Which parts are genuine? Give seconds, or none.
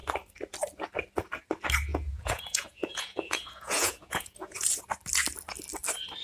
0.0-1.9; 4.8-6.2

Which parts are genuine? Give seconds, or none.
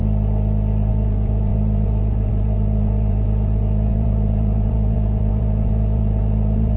0.0-0.9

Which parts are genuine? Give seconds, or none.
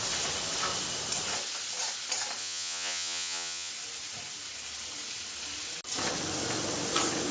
0.0-2.4; 3.7-7.3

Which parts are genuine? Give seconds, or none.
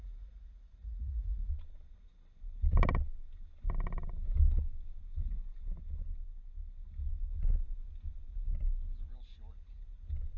1.5-10.4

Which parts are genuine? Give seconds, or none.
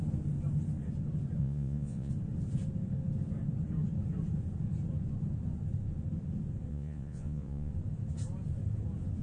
0.0-1.4; 2.1-6.7; 7.7-9.2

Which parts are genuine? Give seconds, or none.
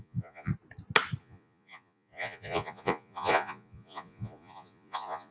0.5-1.2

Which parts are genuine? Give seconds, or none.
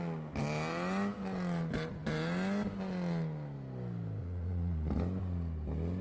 0.0-4.2; 5.0-6.0